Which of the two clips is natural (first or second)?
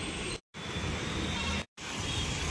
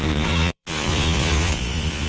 first